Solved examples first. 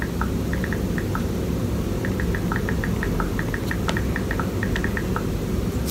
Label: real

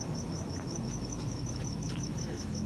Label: fake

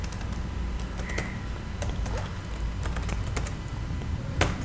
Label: real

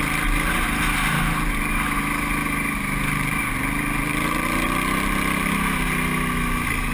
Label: real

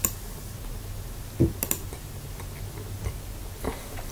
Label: real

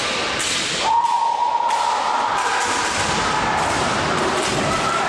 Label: real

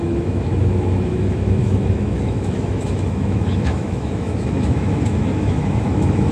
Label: fake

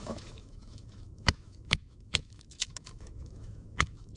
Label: fake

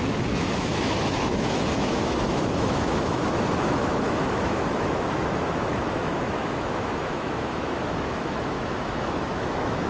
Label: fake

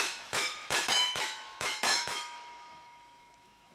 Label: fake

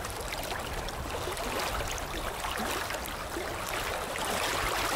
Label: real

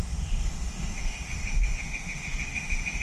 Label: fake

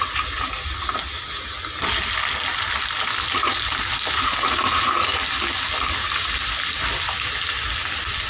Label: real